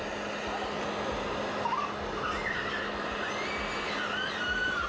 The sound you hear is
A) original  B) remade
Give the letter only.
A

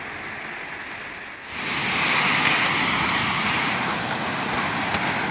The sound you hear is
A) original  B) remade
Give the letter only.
A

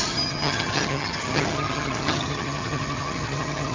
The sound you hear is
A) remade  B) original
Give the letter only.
A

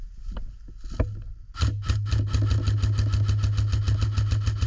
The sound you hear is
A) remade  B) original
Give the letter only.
B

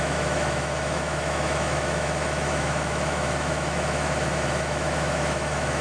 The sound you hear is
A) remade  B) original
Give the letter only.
A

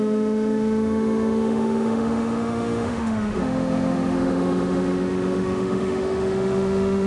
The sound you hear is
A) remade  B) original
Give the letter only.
A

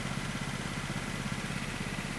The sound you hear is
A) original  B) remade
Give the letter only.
A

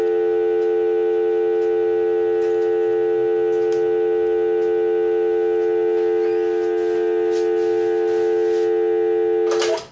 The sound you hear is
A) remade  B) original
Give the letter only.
B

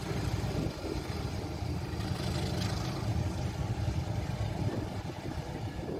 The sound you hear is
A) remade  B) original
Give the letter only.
B